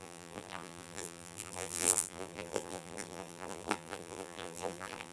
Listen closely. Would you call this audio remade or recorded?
remade